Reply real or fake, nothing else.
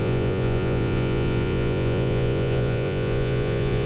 fake